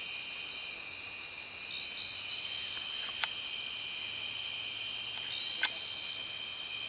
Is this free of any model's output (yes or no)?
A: yes